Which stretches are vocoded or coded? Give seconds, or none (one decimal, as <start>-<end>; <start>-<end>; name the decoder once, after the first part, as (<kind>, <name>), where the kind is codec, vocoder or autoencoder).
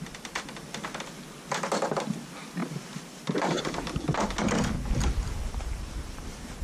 5.5-6.6 (vocoder, BigVGAN v2)